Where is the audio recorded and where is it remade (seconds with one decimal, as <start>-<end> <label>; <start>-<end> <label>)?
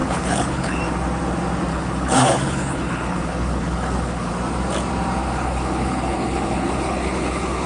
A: 0.0-0.8 remade; 0.8-1.7 recorded; 1.7-4.3 remade; 4.3-5.2 recorded; 5.2-7.7 remade